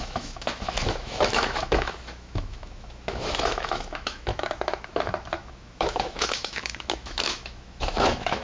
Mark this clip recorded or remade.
remade